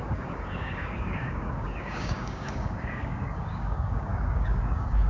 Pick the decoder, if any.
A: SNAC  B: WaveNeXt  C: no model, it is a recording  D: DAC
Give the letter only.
D